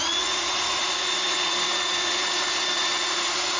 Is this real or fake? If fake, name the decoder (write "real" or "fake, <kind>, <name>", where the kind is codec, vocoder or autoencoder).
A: fake, vocoder, Vocos